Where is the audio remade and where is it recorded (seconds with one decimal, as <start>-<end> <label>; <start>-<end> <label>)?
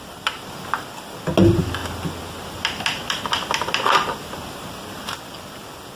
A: 0.0-6.0 recorded